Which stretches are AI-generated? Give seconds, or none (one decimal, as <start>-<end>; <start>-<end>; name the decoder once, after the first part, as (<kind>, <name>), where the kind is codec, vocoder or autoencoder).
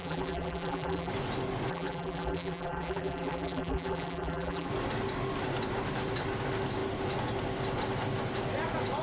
0.0-1.1 (vocoder, BigVGAN v2); 1.7-4.7